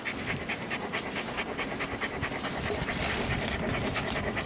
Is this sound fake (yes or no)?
no